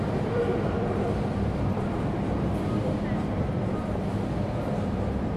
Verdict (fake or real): fake